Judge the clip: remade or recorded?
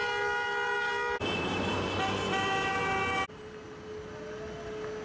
recorded